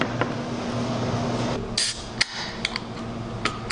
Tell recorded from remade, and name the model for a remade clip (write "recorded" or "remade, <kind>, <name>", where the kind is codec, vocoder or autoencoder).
recorded